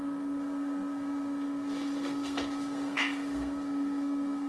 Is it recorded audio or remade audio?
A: remade